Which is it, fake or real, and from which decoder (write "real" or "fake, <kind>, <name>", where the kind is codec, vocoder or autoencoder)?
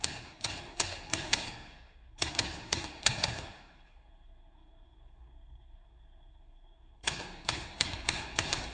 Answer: fake, codec, SNAC